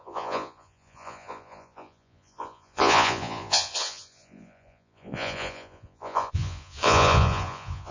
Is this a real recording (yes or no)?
no